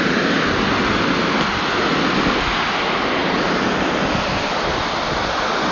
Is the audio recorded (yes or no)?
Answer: yes